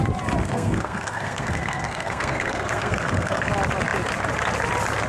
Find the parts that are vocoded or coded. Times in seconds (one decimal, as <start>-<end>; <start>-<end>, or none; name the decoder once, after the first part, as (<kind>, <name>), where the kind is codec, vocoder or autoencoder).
0.4-3.5 (codec, SNAC)